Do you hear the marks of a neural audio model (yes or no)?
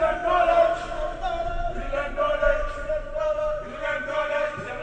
no